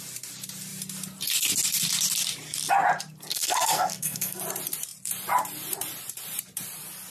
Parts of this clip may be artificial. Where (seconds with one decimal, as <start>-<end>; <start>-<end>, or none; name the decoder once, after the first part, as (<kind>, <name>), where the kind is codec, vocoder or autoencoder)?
3.3-4.4 (codec, SNAC)